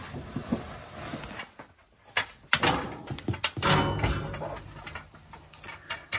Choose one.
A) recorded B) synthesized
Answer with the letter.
A